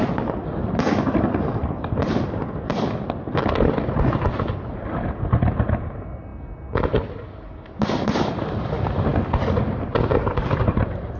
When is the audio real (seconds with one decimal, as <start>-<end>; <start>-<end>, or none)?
0.0-11.2